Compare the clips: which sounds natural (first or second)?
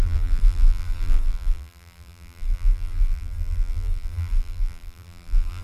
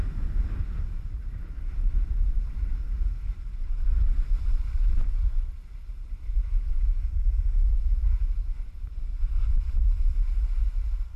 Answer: second